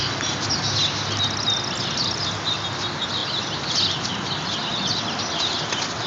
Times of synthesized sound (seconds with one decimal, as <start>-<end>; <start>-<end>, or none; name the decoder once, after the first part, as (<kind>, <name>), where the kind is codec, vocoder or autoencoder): none